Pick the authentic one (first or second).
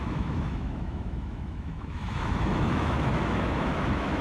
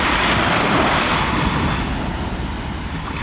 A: second